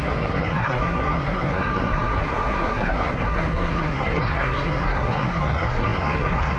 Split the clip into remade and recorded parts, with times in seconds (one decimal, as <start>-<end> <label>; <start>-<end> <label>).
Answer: 0.0-6.6 remade